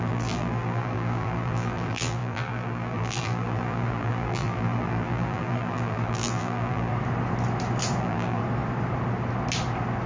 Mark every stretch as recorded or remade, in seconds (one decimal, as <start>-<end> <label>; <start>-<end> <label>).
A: 0.0-6.9 remade; 6.9-8.0 recorded; 8.0-8.4 remade; 8.4-10.1 recorded